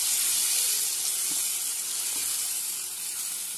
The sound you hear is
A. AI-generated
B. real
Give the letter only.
B